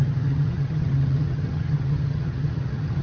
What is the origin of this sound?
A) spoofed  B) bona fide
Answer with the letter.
A